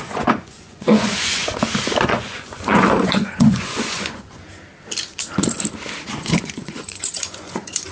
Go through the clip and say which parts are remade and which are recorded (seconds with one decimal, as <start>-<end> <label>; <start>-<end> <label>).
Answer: 0.0-1.4 remade; 1.4-2.0 recorded; 2.0-4.4 remade; 4.4-6.1 recorded; 6.1-7.9 remade

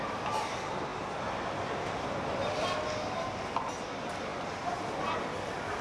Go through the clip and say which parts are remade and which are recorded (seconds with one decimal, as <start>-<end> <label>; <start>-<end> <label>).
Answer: 0.0-5.8 recorded

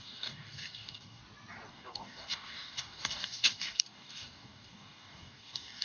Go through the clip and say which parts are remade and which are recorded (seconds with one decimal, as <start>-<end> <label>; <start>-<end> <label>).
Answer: 0.0-1.2 remade; 1.2-1.7 recorded; 1.7-5.8 remade

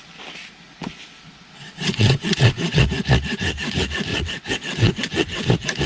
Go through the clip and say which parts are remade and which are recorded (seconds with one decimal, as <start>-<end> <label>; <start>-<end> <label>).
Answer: 0.0-1.6 recorded; 1.6-2.9 remade; 2.9-4.1 recorded; 4.1-5.5 remade; 5.5-5.9 recorded

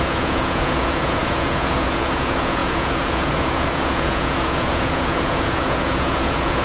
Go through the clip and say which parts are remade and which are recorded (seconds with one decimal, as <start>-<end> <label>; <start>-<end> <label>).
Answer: 0.0-6.6 remade